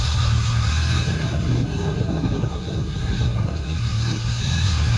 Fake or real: fake